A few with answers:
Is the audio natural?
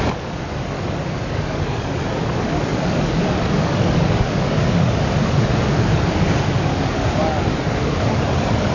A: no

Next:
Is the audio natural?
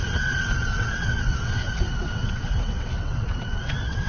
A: no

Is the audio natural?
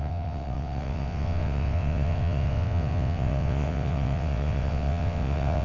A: no